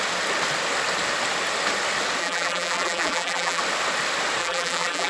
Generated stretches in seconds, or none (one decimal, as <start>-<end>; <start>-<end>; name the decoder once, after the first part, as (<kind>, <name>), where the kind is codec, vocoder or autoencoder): 2.2-3.6 (vocoder, BigVGAN v2); 4.4-5.1